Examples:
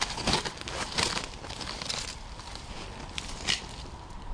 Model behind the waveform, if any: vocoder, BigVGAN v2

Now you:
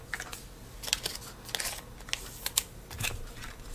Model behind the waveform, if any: none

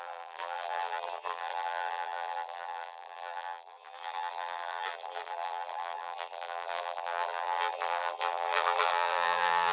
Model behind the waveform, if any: vocoder, BigVGAN v2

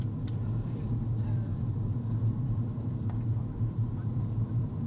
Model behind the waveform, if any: vocoder, BigVGAN v2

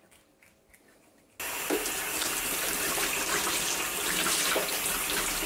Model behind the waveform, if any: none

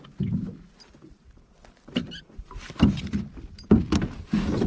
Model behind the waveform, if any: none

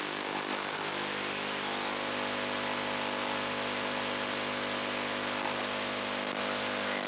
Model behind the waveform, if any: none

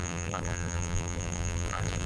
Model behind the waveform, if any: vocoder, BigVGAN v2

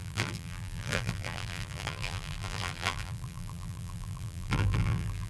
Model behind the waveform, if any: vocoder, BigVGAN v2